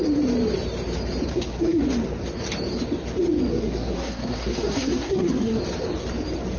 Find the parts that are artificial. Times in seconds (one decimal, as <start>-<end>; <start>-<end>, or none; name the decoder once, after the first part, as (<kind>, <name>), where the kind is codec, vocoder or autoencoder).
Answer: 1.3-1.8 (codec, SNAC); 3.5-5.6